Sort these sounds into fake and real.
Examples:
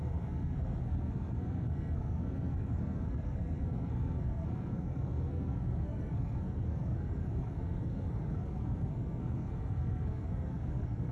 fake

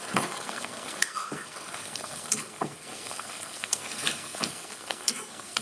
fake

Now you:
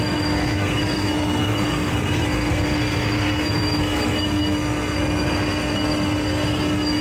fake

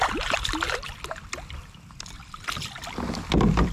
real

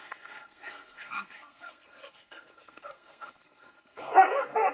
fake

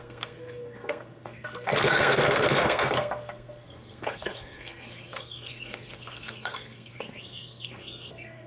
fake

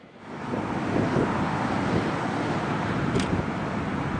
real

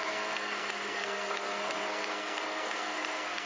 fake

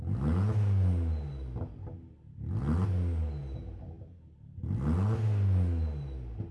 real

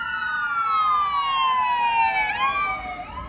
real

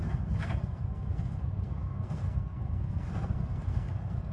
fake